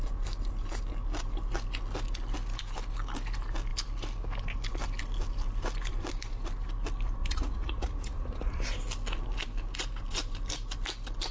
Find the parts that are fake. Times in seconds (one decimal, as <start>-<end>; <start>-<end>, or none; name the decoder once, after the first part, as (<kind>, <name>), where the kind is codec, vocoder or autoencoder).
7.2-8.6 (vocoder, Vocos)